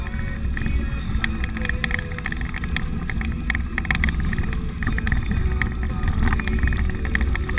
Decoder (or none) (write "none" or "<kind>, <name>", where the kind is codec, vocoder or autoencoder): none